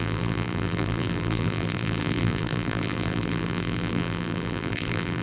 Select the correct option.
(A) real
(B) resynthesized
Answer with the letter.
B